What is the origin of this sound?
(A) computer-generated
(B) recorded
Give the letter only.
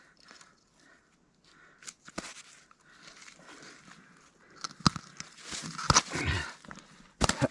B